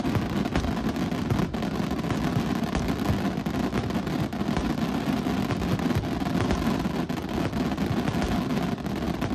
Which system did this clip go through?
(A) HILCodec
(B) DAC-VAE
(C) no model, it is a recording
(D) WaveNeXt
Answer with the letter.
C